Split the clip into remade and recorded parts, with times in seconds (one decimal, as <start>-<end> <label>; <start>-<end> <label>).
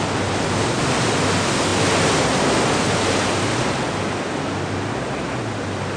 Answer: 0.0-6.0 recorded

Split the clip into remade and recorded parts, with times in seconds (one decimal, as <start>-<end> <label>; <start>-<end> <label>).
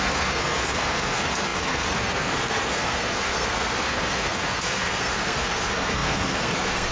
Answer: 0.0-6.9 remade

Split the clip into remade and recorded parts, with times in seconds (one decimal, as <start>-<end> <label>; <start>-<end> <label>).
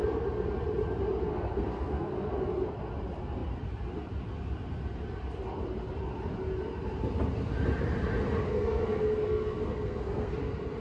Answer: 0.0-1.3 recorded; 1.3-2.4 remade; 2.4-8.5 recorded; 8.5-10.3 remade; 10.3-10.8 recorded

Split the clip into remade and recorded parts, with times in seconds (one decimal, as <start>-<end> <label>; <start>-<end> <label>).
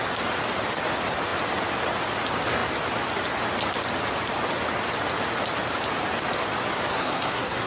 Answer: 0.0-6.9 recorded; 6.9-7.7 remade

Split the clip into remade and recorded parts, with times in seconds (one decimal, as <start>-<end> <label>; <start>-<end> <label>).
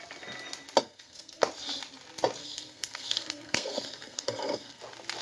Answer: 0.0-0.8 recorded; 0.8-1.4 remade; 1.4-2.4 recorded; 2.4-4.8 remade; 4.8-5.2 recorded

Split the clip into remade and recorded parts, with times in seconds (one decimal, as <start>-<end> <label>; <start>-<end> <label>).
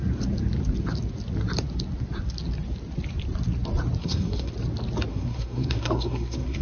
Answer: 0.0-4.0 recorded; 4.0-4.5 remade; 4.5-5.1 recorded; 5.1-6.6 remade